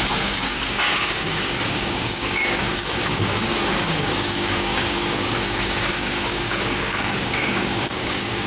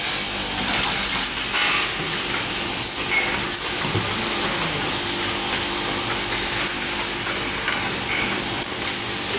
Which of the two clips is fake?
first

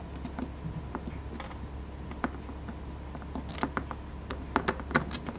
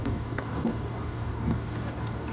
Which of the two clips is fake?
second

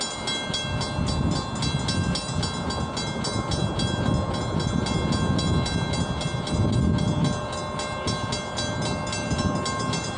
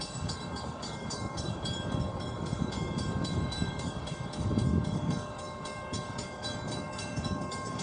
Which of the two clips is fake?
second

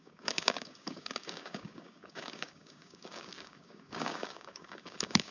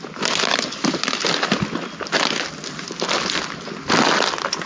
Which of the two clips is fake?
first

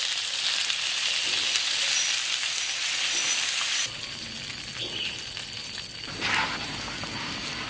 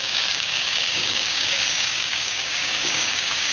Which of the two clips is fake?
second